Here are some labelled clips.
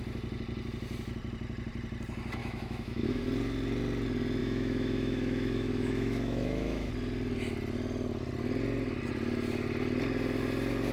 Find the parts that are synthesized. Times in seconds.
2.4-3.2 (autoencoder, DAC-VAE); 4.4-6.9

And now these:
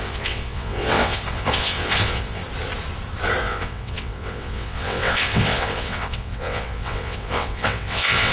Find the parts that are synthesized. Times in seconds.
0.0-2.4 (vocoder, WaveNeXt); 3.4-8.3

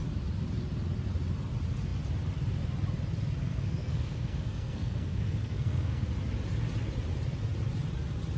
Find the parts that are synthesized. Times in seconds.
3.5-6.1 (codec, SNAC)

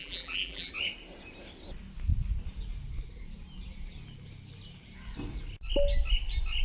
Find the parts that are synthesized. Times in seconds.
0.0-0.7 (vocoder, BigVGAN v2)